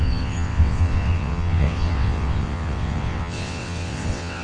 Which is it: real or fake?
fake